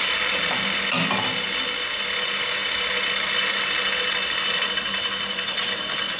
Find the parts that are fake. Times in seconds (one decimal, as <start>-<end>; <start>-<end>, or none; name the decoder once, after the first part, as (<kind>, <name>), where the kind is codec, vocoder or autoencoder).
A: none